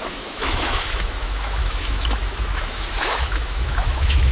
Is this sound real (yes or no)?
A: no